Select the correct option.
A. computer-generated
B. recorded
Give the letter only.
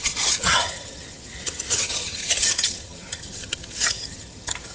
A